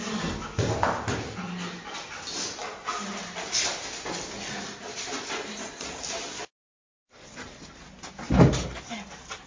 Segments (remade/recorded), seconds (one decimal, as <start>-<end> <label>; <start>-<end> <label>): 0.0-9.5 recorded